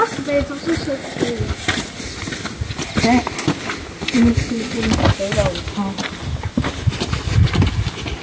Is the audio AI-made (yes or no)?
no